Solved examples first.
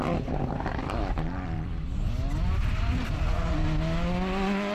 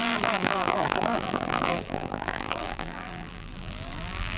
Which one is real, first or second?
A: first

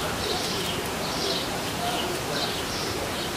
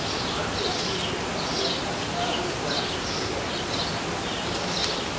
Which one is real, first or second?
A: second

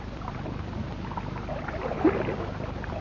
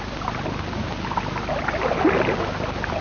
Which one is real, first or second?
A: second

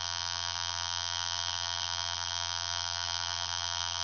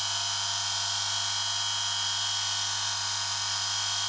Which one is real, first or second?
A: second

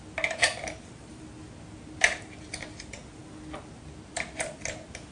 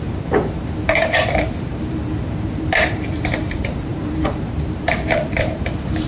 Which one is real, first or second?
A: first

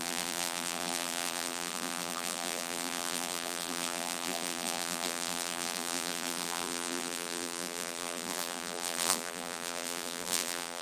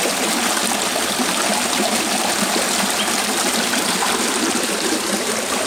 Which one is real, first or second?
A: second